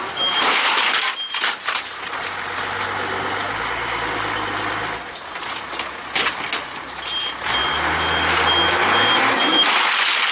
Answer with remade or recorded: recorded